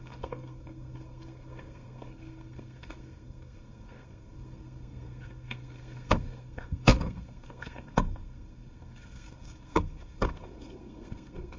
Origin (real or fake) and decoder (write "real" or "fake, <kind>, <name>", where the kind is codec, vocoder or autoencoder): fake, codec, SNAC